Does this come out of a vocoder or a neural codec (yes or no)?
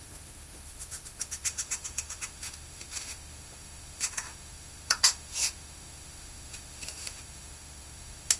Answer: yes